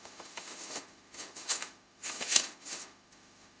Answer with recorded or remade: remade